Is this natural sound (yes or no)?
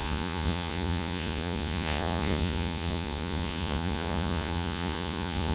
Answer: no